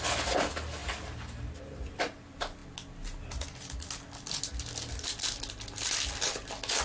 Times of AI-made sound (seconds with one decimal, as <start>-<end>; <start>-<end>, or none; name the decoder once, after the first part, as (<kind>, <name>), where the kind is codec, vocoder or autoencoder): none